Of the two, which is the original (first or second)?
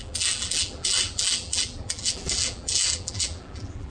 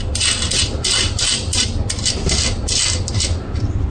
second